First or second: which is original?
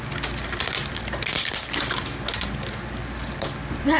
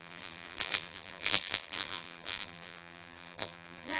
first